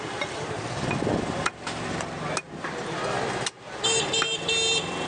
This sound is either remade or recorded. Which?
recorded